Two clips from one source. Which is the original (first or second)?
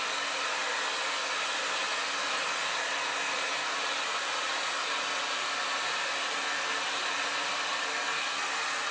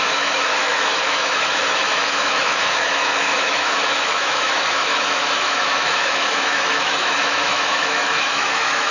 first